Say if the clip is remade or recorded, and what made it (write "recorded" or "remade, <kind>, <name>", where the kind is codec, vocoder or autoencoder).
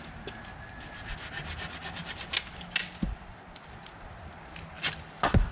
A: recorded